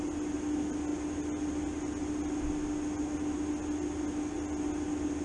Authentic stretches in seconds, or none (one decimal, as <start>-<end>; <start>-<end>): 0.0-5.2